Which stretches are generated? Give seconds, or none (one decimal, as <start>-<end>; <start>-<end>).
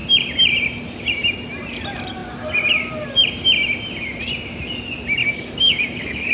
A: 5.2-6.3